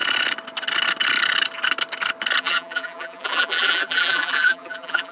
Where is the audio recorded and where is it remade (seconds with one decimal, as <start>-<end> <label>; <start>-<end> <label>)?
0.0-2.4 recorded; 2.4-5.1 remade